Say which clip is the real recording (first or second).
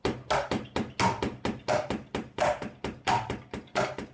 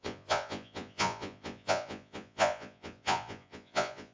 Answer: first